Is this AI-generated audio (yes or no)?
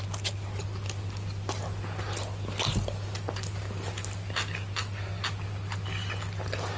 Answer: no